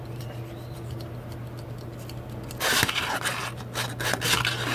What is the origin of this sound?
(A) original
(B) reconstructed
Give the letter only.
B